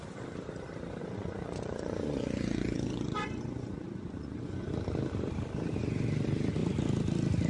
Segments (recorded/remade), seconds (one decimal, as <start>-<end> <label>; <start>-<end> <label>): 0.0-1.0 recorded; 1.0-4.7 remade; 4.7-7.5 recorded